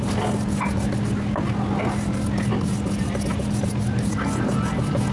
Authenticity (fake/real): real